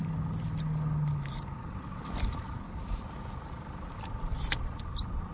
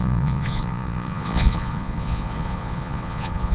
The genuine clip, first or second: first